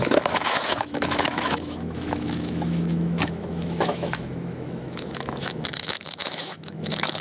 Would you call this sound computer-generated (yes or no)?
yes